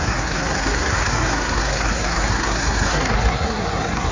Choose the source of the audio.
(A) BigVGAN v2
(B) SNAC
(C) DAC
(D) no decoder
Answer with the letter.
B